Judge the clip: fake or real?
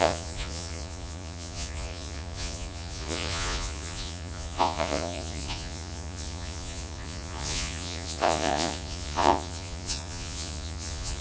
fake